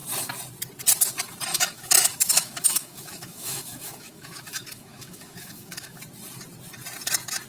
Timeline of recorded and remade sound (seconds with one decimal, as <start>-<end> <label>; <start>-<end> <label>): 0.0-1.5 recorded; 1.5-6.0 remade; 6.0-7.5 recorded